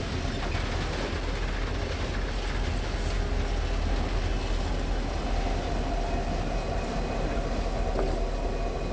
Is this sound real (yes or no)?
yes